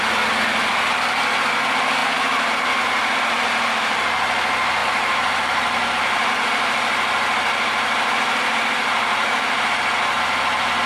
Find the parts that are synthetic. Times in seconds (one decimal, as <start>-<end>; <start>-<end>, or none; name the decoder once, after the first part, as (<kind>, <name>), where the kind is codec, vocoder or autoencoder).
4.8-6.3 (vocoder, BigVGAN v2); 9.1-9.7